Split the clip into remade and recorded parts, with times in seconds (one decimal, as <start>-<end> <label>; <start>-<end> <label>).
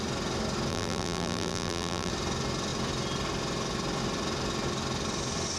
0.0-0.7 recorded; 0.7-2.1 remade; 2.1-5.6 recorded